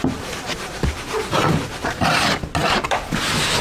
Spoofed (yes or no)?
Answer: no